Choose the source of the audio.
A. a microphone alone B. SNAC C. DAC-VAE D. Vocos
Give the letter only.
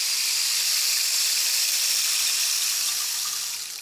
A